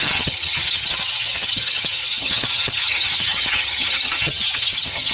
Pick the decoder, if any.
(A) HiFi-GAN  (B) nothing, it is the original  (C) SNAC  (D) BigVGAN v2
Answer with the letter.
A